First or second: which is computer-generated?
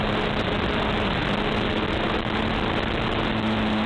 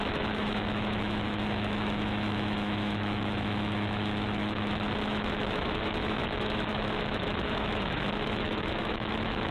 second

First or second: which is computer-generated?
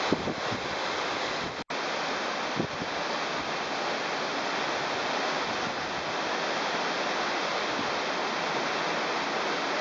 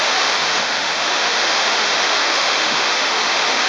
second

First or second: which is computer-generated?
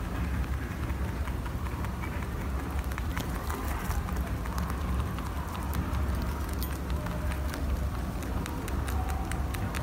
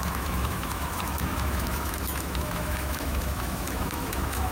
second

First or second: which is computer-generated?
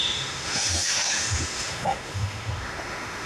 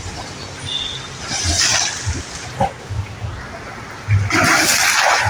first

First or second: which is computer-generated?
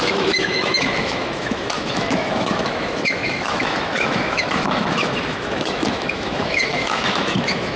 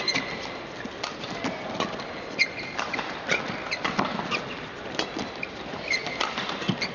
first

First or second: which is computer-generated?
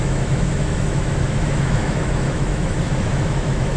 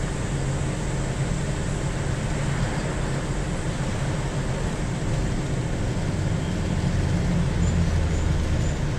first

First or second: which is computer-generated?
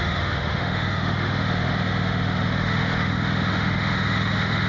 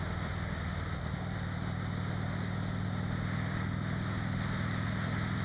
first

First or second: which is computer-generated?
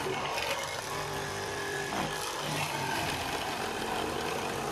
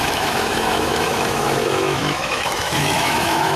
second